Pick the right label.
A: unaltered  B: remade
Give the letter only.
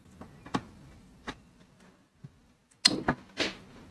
A